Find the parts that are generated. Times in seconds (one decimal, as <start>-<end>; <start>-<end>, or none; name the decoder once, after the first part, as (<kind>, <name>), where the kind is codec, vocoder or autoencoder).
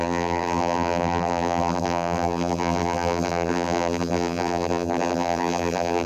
0.0-6.1 (vocoder, BigVGAN v2)